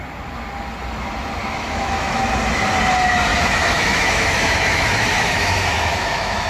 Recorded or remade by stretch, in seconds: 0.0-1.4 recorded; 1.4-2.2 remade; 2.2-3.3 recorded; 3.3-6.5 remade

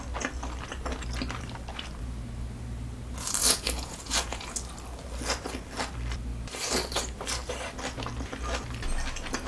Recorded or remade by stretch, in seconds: 0.0-3.4 recorded; 3.4-4.6 remade; 4.6-9.5 recorded

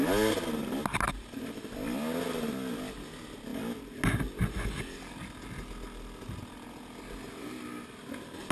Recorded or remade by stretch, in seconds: 0.0-8.5 recorded

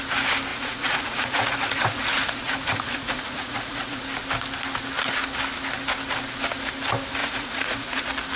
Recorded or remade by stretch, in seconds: 0.0-0.5 recorded; 0.5-4.0 remade; 4.0-7.2 recorded; 7.2-8.0 remade; 8.0-8.4 recorded

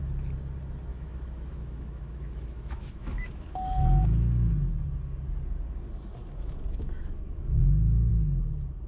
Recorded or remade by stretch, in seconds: 0.0-0.9 recorded; 0.9-4.0 remade; 4.0-6.2 recorded; 6.2-8.1 remade; 8.1-8.9 recorded

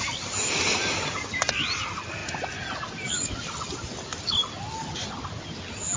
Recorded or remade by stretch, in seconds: 0.0-6.0 recorded

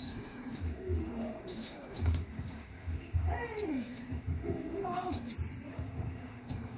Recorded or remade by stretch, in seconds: 0.0-3.3 remade; 3.3-3.7 recorded; 3.7-5.3 remade; 5.3-5.7 recorded; 5.7-6.8 remade